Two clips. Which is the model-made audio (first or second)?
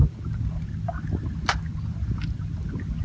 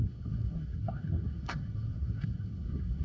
second